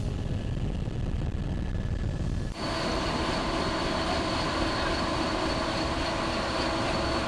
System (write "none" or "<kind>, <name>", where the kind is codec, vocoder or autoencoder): none